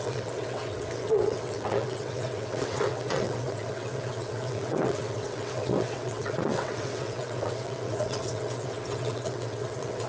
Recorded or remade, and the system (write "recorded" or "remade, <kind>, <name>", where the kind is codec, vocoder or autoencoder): remade, vocoder, WaveNeXt